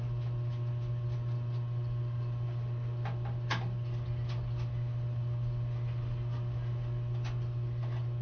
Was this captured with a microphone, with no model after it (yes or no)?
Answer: yes